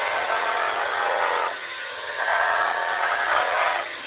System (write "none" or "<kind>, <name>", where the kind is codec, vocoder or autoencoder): vocoder, HiFi-GAN